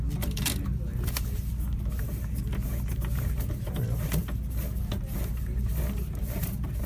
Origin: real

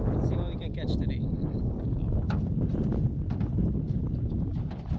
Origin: real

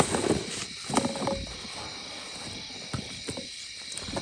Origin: real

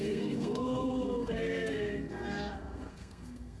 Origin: fake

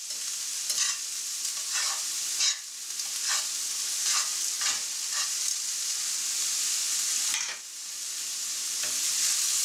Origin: real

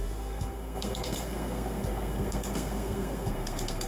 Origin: fake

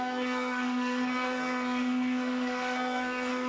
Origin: fake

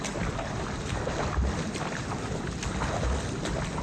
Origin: real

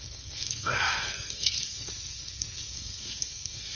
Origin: fake